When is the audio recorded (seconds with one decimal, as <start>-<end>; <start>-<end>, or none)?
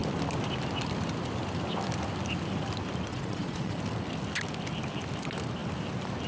0.0-3.1; 3.8-6.3